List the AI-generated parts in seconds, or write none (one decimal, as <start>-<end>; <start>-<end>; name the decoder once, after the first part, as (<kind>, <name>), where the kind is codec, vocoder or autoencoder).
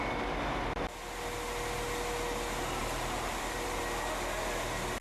2.8-3.8 (vocoder, BigVGAN v2)